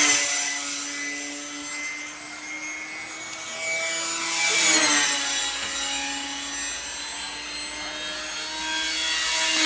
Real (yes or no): yes